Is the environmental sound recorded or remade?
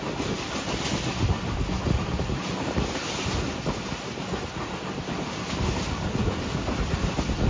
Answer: recorded